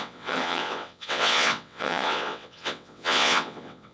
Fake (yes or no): yes